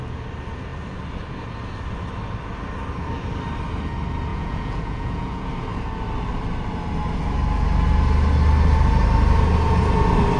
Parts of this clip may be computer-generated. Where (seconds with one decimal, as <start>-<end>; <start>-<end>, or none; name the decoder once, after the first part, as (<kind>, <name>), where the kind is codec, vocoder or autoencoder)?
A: 4.3-5.5 (vocoder, Vocos)

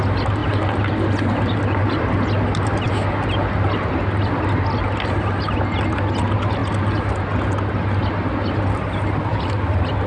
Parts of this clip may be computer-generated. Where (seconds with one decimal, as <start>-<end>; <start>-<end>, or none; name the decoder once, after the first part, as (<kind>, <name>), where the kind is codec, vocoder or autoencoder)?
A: none

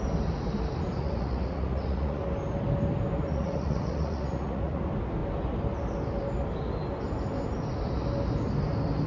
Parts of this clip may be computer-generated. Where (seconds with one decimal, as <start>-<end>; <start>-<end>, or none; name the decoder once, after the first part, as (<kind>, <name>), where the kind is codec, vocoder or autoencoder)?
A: 1.0-2.2 (vocoder, Vocos); 3.3-4.8

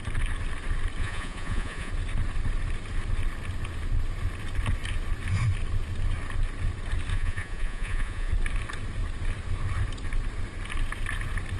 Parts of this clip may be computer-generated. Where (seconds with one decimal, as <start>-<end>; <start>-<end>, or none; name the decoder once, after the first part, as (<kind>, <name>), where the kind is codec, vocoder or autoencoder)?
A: 1.0-1.9 (vocoder, Vocos); 7.1-8.3

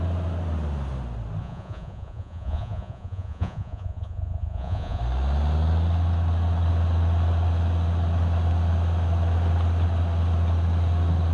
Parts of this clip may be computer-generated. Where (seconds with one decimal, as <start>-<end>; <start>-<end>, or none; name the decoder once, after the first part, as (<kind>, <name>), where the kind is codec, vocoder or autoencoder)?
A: 1.4-5.0 (vocoder, Vocos)